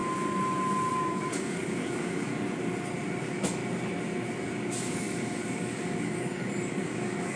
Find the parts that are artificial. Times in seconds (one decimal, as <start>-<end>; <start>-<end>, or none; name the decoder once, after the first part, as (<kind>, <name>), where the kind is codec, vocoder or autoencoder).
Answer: 0.9-2.3 (codec, DAC); 3.2-3.6; 4.4-7.4